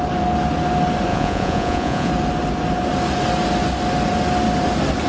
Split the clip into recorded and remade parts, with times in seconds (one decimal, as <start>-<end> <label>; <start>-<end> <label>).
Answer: 0.0-1.1 recorded; 1.1-2.1 remade; 2.1-5.1 recorded